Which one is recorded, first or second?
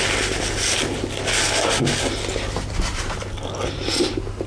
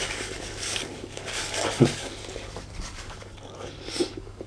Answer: first